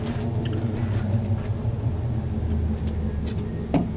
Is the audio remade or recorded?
recorded